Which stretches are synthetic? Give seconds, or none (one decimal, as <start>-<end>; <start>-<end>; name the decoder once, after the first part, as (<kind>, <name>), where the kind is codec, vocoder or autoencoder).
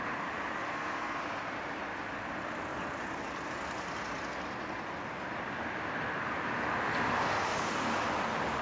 0.7-1.2 (codec, SNAC)